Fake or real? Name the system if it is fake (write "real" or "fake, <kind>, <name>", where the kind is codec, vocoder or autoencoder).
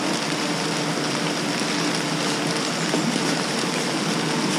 real